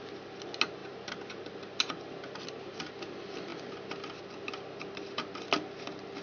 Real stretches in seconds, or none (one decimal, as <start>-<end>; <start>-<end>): 0.0-6.2